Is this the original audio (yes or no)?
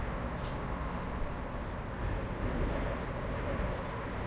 yes